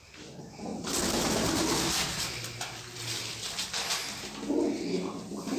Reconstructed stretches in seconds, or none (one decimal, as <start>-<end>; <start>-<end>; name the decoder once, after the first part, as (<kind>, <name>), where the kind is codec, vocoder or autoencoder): none